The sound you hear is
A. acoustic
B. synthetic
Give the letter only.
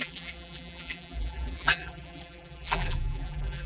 B